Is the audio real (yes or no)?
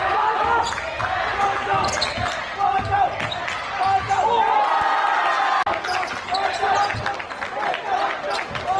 yes